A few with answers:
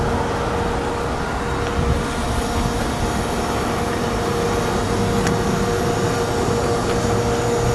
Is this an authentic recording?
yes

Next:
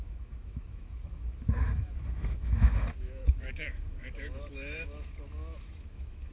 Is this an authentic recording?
no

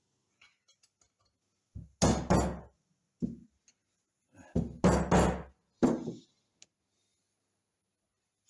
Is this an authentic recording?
yes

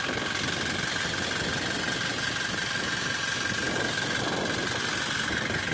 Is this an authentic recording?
yes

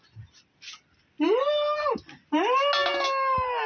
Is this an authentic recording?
yes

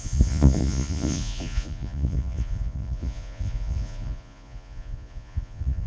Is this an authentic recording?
no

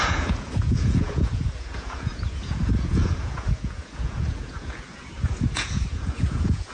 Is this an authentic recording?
no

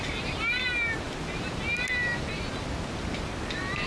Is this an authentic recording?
yes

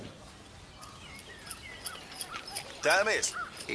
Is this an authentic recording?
yes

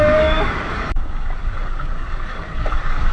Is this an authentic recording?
no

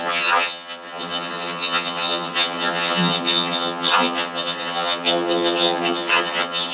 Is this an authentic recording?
no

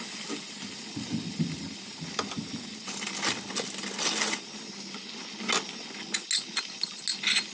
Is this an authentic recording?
yes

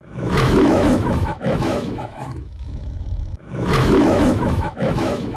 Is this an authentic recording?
no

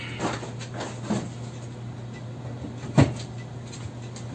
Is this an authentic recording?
yes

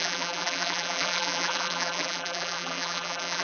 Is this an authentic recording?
no